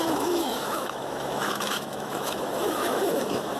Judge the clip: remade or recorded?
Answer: remade